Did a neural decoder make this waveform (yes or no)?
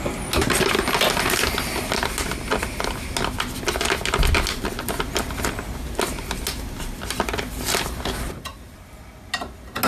no